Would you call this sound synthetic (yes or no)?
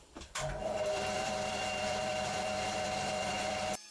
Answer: yes